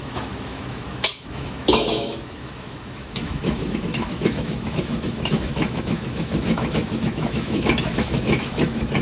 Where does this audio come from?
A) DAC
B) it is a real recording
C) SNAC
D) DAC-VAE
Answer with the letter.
D